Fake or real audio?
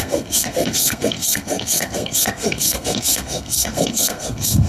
fake